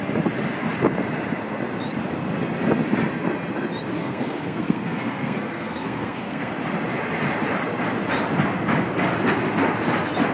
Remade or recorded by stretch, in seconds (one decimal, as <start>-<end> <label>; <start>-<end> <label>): 0.0-4.0 recorded; 4.0-6.5 remade; 6.5-10.3 recorded